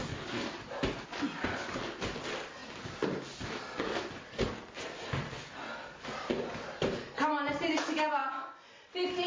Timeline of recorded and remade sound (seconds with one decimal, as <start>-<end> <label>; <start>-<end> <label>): 0.0-9.3 recorded